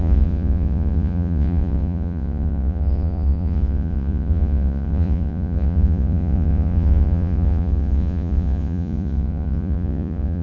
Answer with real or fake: fake